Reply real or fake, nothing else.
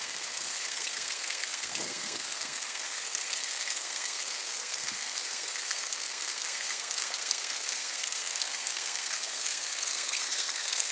fake